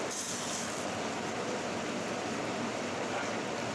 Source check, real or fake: real